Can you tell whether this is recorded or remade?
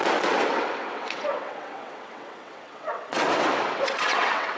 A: remade